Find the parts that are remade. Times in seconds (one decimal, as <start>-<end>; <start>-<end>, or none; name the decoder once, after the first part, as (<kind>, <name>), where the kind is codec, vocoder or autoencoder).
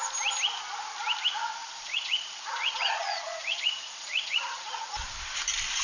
1.6-5.1 (vocoder, Vocos)